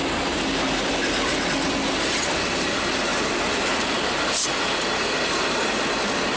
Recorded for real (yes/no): yes